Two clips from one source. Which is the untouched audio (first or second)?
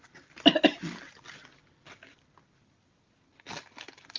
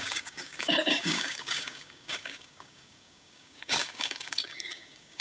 first